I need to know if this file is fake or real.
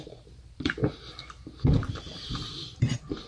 fake